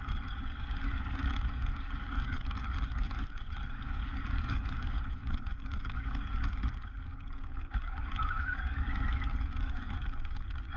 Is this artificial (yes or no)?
yes